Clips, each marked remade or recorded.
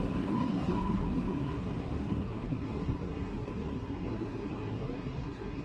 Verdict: remade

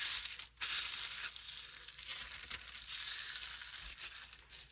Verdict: recorded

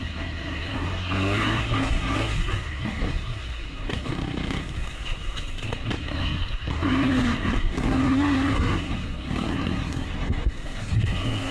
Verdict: remade